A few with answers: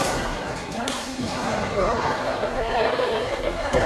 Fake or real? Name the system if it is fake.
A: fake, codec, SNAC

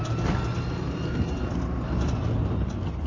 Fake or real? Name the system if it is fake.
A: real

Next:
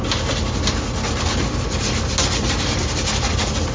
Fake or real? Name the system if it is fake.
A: real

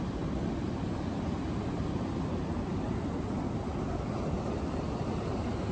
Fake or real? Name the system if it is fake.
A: real